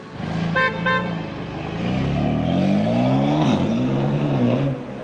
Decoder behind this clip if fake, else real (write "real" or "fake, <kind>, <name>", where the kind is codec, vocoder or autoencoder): real